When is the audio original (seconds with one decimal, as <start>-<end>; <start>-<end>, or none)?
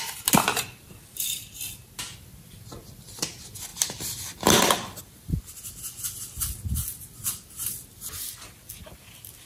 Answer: 0.0-3.7; 5.0-9.5